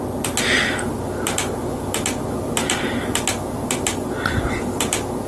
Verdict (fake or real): real